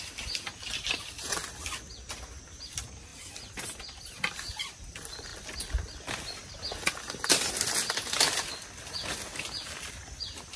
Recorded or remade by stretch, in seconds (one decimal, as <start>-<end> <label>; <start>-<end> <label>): 0.0-10.6 recorded